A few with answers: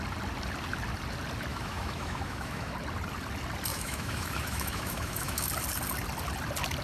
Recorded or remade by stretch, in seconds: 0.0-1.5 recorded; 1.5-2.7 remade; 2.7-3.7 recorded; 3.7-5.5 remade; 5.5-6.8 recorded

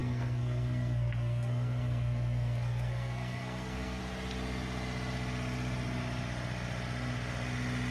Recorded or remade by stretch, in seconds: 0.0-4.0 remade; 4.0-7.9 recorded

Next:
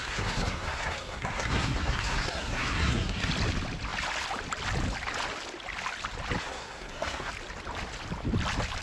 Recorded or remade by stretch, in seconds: 0.0-3.3 remade; 3.3-6.4 recorded; 6.4-7.3 remade; 7.3-8.8 recorded

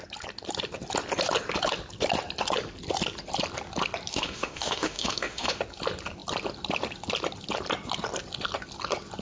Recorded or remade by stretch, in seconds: 0.0-4.1 recorded; 4.1-5.6 remade; 5.6-9.2 recorded

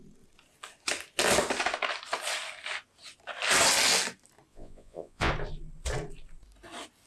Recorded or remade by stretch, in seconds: 0.0-4.5 recorded; 4.5-5.3 remade; 5.3-7.1 recorded